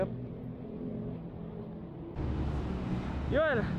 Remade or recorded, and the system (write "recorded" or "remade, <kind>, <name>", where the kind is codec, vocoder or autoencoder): recorded